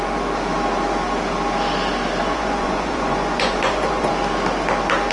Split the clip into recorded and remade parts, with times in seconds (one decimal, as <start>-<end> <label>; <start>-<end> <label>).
0.0-2.2 recorded; 2.2-4.1 remade; 4.1-5.1 recorded